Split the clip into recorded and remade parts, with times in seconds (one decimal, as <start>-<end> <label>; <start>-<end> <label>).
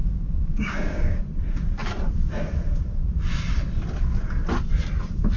0.0-1.2 remade; 1.2-5.4 recorded